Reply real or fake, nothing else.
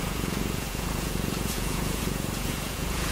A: fake